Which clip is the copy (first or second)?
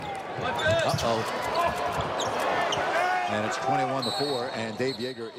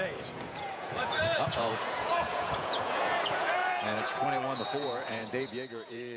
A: second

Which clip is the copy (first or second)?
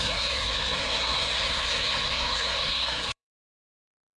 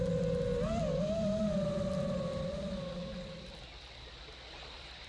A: first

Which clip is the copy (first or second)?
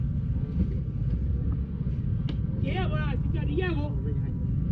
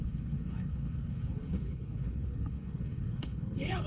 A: second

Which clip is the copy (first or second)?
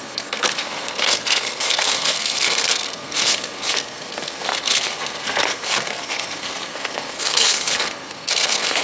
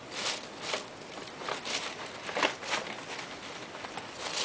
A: first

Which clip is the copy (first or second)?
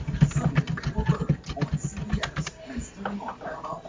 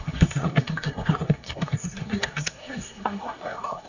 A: second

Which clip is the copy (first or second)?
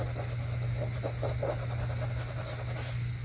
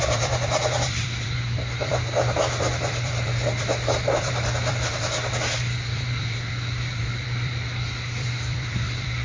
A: second